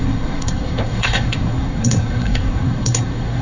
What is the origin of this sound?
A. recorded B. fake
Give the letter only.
B